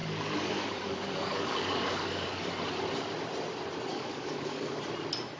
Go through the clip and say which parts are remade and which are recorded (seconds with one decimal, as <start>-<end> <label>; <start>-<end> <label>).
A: 0.0-2.5 remade; 2.5-3.9 recorded; 3.9-4.8 remade; 4.8-5.4 recorded